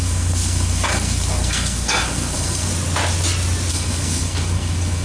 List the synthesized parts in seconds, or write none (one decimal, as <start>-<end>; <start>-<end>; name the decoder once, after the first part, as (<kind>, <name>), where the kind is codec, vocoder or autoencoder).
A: 0.0-2.7 (codec, SNAC); 3.7-5.0